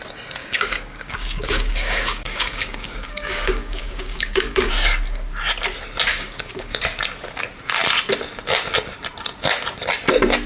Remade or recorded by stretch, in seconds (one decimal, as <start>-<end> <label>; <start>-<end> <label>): 0.0-0.4 recorded; 0.4-4.7 remade; 4.7-6.1 recorded; 6.1-6.8 remade; 6.8-10.5 recorded